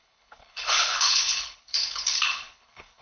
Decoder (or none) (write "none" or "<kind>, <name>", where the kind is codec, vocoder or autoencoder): codec, HILCodec